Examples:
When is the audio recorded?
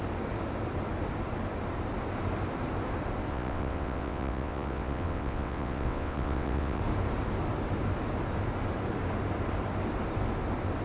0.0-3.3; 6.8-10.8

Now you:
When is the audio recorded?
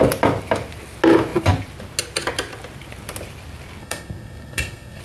0.0-3.8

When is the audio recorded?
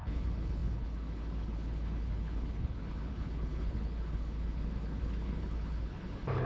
none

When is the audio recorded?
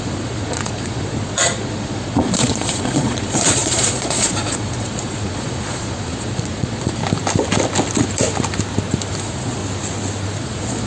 7.0-9.2; 9.6-10.4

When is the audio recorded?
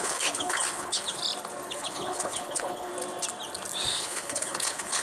1.2-1.7; 2.9-3.9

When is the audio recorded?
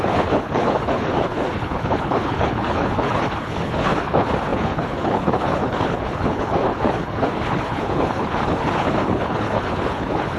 none